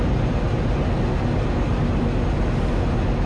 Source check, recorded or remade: recorded